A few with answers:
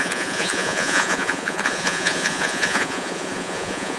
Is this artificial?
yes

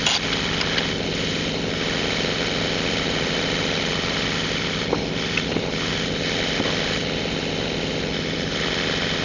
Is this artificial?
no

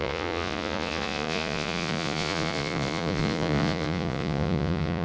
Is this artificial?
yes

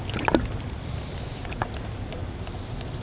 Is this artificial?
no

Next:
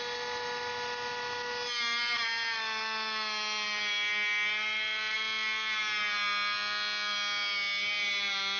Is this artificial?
no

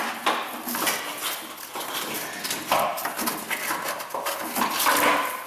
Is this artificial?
no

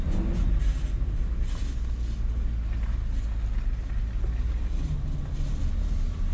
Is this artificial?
no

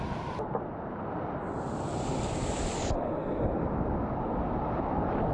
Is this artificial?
no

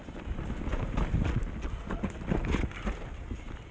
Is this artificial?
no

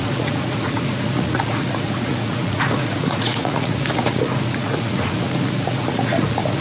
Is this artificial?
yes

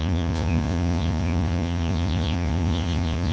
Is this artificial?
yes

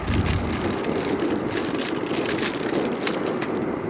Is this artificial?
no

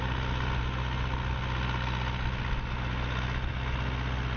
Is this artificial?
no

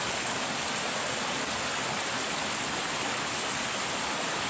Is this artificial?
no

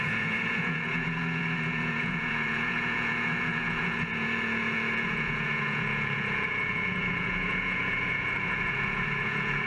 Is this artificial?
yes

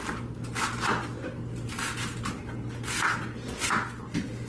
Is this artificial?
no